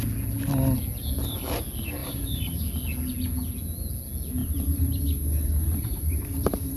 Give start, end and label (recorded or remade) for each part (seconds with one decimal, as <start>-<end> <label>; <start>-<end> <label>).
0.0-2.0 recorded; 2.0-2.6 remade; 2.6-4.4 recorded; 4.4-6.8 remade